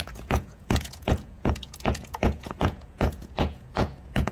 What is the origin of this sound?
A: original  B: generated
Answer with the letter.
B